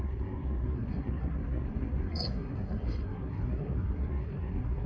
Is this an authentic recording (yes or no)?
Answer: no